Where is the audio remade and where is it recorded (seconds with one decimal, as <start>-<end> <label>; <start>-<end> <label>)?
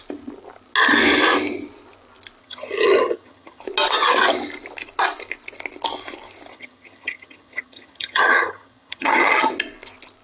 0.0-2.4 recorded; 2.4-3.6 remade; 3.6-6.5 recorded; 6.5-9.5 remade; 9.5-10.2 recorded